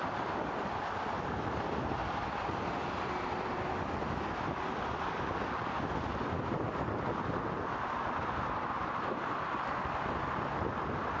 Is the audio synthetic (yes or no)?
no